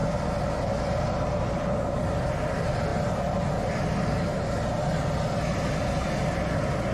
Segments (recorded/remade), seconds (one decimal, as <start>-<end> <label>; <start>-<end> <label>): 0.0-6.9 recorded